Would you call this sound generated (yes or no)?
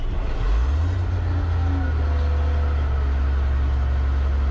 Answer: no